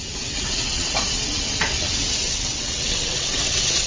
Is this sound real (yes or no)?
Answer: no